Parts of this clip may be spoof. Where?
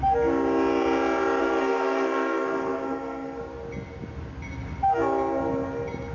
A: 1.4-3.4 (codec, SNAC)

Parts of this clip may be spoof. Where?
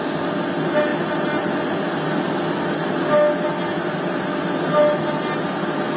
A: none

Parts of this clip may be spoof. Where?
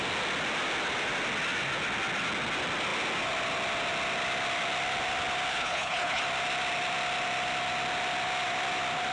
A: 5.5-6.2 (codec, HILCodec)